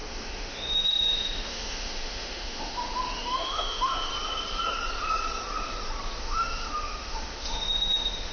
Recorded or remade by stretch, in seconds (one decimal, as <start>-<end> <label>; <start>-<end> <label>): 0.0-4.1 remade; 4.1-6.2 recorded; 6.2-8.3 remade